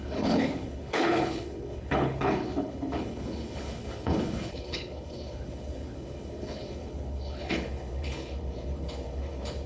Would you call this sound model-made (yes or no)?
yes